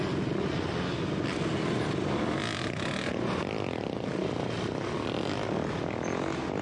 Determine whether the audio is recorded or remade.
recorded